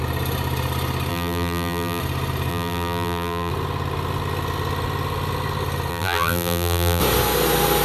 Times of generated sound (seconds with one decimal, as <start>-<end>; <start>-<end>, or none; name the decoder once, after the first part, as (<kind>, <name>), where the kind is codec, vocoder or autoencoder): 1.1-2.0 (vocoder, BigVGAN v2); 2.5-3.5; 5.9-7.0